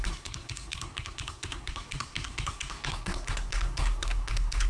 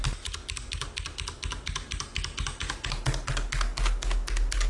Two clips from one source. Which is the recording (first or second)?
second